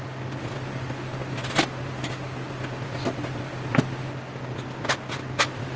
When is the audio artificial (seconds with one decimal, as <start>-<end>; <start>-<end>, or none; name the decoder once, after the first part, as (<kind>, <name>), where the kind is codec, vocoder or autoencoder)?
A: none